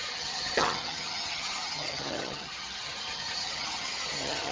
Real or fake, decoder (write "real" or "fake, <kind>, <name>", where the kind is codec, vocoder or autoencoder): fake, vocoder, HiFi-GAN